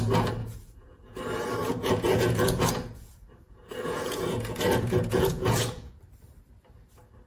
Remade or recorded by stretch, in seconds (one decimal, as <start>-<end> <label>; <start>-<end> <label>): 0.0-0.4 recorded; 0.4-1.2 remade; 1.2-1.6 recorded; 1.6-6.0 remade; 6.0-7.3 recorded